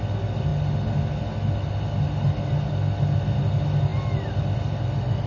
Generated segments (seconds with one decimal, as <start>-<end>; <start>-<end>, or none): none